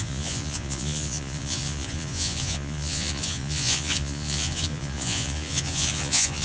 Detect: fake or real fake